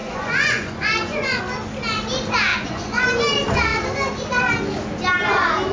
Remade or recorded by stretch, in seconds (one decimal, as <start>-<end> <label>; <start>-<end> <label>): 0.0-1.4 remade; 1.4-2.5 recorded; 2.5-3.2 remade; 3.2-5.7 recorded